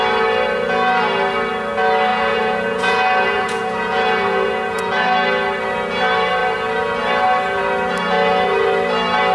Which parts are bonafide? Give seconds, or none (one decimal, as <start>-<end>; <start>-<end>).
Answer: 0.0-2.1; 4.9-9.3

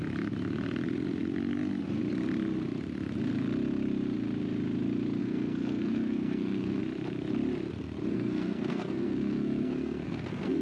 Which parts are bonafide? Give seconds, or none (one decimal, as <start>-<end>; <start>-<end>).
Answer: 0.0-5.2; 6.8-8.1

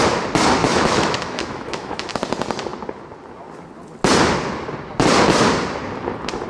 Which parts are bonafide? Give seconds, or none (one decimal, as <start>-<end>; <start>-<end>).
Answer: 0.0-0.6; 2.1-6.5

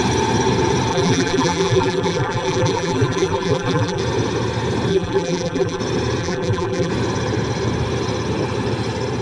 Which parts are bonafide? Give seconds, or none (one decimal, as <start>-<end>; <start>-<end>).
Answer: 0.0-0.9; 4.0-4.9; 5.8-6.2; 6.9-9.2

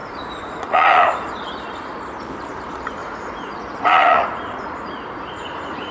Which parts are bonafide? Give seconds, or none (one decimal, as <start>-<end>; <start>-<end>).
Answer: 1.3-3.0

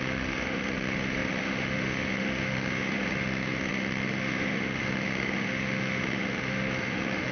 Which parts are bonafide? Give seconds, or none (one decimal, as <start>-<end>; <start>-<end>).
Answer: none

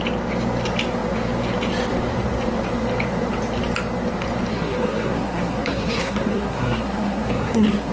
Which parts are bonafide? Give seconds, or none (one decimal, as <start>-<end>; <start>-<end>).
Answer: 0.0-4.5

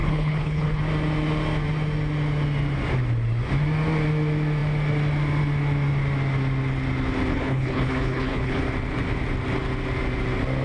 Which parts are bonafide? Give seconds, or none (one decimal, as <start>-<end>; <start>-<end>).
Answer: 0.8-7.3; 8.6-10.6